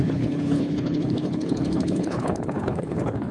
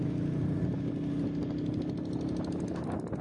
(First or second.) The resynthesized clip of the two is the first